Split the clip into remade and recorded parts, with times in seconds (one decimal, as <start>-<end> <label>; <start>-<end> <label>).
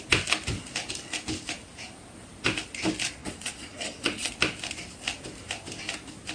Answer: 0.0-3.2 recorded; 3.2-4.3 remade; 4.3-6.3 recorded